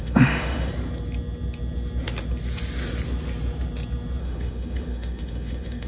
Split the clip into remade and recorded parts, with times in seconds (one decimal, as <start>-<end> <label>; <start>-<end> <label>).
0.0-0.7 remade; 0.7-4.2 recorded; 4.2-5.9 remade